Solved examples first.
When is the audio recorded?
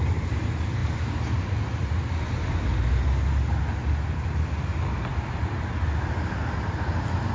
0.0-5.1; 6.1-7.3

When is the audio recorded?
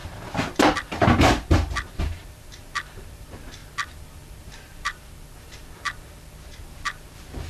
0.0-2.0; 3.6-4.2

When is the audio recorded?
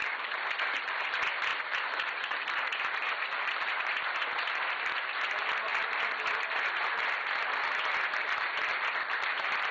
1.1-1.5; 3.5-9.7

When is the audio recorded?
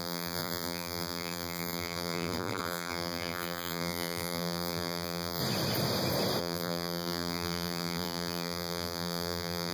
5.4-6.4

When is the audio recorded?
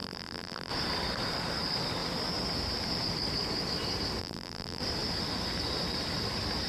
0.7-4.2; 4.8-6.7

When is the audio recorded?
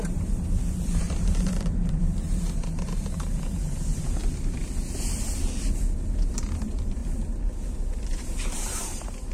4.2-6.3; 7.0-8.0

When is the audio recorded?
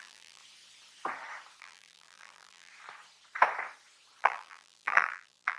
0.4-1.6; 2.7-4.2